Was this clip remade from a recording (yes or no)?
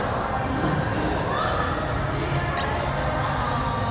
no